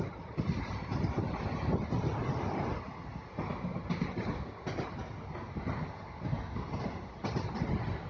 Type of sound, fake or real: real